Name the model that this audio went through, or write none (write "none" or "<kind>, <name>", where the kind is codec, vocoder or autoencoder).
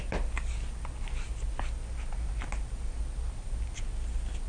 none